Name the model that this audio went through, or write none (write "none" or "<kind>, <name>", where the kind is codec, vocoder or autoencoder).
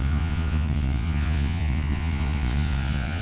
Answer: vocoder, Vocos